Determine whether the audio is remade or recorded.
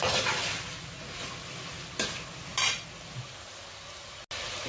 recorded